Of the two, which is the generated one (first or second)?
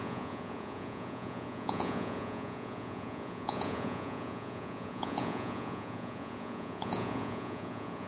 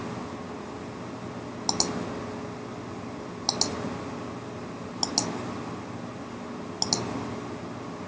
first